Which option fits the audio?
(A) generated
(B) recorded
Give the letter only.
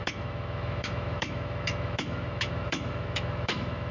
A